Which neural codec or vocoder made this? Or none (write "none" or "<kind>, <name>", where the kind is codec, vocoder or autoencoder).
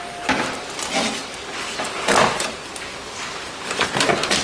none